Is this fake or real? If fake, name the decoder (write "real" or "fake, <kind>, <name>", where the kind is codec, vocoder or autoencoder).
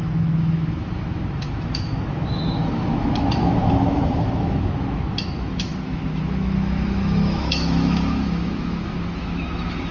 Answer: fake, autoencoder, DAC-VAE